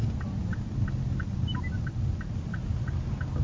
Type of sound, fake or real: real